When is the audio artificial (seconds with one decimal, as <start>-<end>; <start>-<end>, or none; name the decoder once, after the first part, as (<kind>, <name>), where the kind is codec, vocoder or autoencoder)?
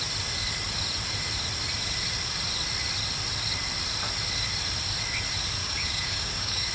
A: 5.6-6.7 (codec, DAC)